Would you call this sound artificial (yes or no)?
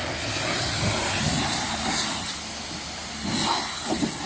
no